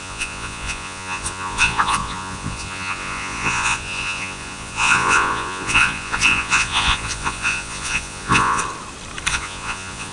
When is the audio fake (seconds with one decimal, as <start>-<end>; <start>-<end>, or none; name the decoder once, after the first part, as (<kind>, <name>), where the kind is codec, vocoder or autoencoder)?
0.0-8.6 (vocoder, Vocos); 9.3-10.1